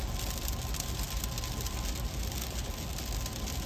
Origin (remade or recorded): recorded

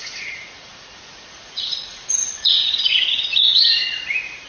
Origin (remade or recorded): remade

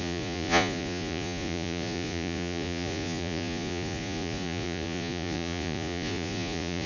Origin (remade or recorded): remade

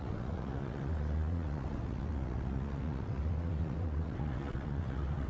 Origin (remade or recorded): remade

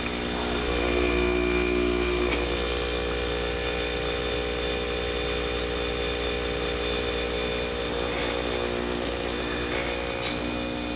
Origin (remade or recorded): recorded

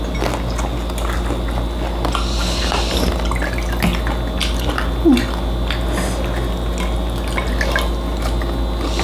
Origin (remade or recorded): recorded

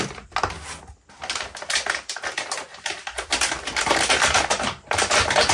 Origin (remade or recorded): recorded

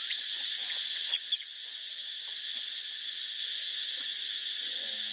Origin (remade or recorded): remade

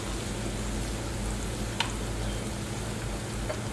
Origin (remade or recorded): recorded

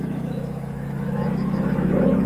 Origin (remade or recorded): remade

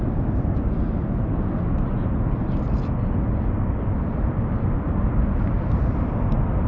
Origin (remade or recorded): recorded